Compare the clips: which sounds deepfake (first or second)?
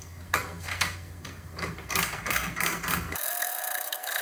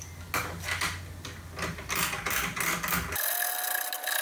first